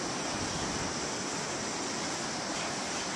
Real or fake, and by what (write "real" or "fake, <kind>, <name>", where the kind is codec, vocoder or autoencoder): real